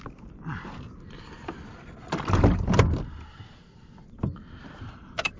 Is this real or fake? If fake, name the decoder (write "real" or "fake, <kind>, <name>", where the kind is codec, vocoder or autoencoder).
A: real